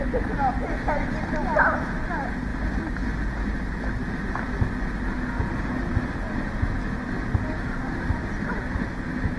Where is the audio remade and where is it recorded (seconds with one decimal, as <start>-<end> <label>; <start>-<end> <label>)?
0.0-9.4 recorded